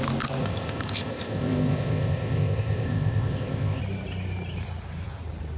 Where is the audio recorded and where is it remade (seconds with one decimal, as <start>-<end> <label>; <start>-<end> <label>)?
0.0-0.4 recorded; 0.4-3.8 remade; 3.8-5.6 recorded